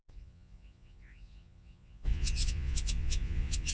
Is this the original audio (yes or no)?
no